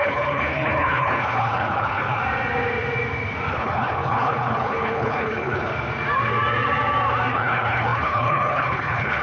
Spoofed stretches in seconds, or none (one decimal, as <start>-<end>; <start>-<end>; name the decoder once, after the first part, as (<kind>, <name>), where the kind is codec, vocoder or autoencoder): 0.0-2.2 (codec, HILCodec); 3.5-5.7; 7.3-9.2